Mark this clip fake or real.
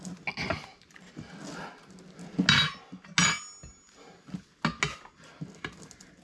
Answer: real